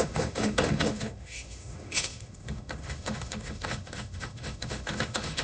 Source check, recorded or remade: remade